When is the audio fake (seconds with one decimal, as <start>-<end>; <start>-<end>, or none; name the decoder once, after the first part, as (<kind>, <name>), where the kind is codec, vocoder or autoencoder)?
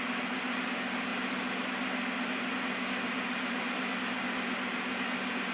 none